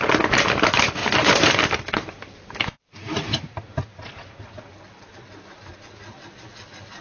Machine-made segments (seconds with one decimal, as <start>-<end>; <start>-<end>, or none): 0.0-3.3; 4.7-7.0